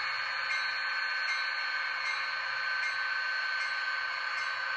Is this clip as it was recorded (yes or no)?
yes